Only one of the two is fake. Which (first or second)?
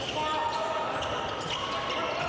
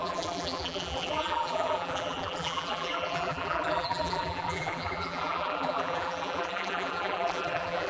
second